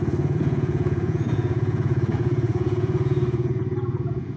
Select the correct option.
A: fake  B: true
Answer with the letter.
A